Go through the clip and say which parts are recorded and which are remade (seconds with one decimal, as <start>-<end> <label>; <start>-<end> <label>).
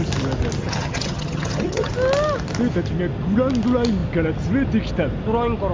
0.0-0.6 recorded; 0.6-1.9 remade; 1.9-5.7 recorded